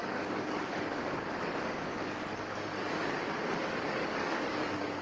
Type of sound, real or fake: fake